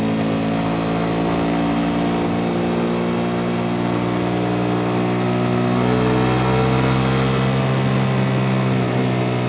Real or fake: real